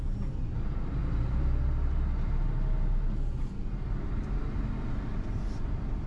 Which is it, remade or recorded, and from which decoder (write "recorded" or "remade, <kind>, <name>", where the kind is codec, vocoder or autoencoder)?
recorded